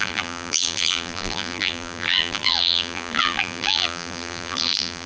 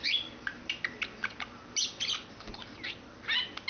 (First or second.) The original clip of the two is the second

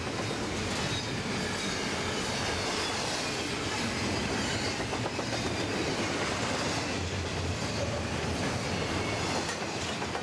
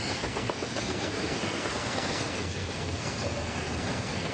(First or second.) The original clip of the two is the first